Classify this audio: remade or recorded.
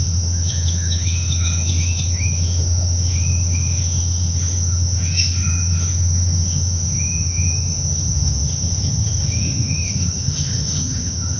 remade